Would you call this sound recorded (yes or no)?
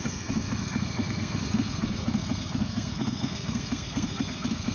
no